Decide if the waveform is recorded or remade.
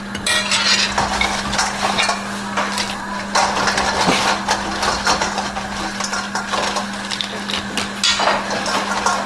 recorded